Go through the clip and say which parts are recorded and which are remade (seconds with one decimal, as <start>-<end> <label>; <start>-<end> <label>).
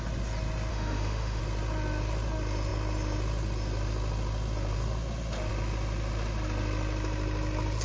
0.0-0.7 recorded; 0.7-1.4 remade; 1.4-7.8 recorded